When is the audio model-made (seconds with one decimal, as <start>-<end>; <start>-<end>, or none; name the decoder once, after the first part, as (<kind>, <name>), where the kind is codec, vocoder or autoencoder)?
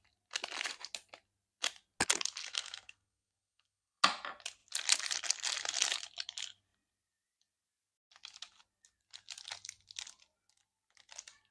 2.4-4.0 (codec, SNAC)